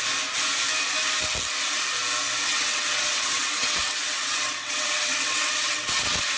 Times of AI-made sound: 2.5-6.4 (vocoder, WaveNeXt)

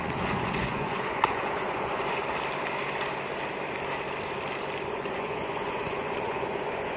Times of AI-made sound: 0.0-2.2 (vocoder, Vocos); 4.9-7.0

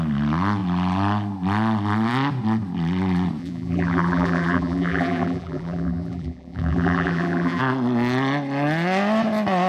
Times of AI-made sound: 3.4-7.6 (vocoder, BigVGAN v2)